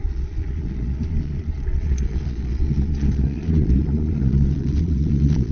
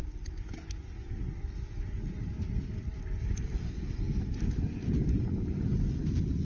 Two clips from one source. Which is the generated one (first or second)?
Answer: first